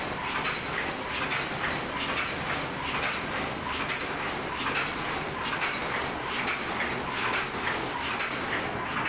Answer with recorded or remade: recorded